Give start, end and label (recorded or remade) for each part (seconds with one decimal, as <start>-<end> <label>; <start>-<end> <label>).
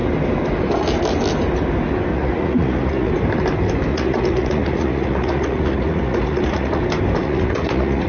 0.0-2.1 recorded; 2.1-3.1 remade; 3.1-3.9 recorded; 3.9-6.8 remade; 6.8-7.2 recorded; 7.2-8.1 remade